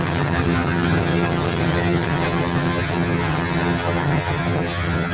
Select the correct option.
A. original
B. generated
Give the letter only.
B